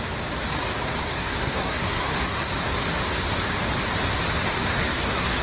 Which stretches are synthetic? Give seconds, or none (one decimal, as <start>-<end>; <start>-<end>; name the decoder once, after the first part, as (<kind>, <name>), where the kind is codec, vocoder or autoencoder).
1.0-2.5 (codec, SNAC); 4.6-5.4